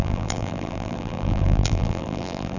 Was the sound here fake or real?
fake